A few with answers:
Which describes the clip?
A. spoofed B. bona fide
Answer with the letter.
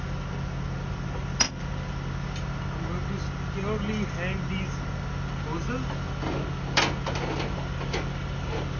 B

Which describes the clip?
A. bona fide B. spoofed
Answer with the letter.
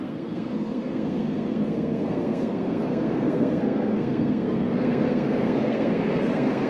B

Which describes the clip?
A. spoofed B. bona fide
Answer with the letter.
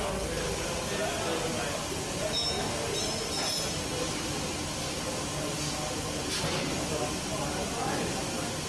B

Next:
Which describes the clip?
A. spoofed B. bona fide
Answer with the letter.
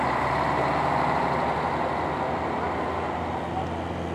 B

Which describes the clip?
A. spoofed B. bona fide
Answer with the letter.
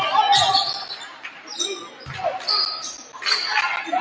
B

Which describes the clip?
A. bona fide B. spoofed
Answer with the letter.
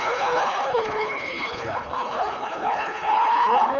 B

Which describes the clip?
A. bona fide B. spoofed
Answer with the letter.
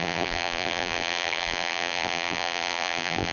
B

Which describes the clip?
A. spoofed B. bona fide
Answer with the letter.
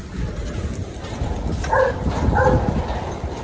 B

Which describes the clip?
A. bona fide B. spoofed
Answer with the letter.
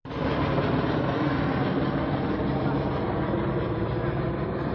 A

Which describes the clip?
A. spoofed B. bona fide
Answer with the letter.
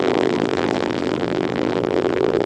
A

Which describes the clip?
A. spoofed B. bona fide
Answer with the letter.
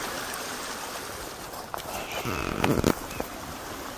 B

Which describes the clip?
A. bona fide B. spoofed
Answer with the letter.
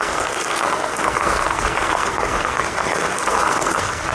B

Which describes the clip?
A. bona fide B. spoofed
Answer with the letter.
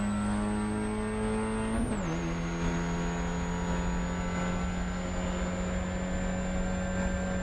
A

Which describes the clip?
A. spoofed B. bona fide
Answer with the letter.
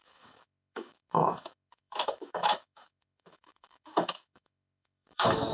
A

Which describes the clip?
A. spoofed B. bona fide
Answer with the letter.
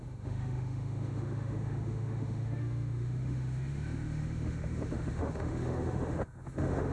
A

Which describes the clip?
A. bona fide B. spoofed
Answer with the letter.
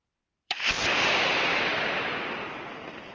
B